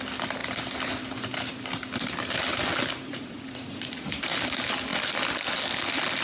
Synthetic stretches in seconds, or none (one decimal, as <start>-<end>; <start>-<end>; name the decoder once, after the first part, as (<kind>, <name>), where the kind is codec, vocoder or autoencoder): 3.1-4.2 (vocoder, Vocos)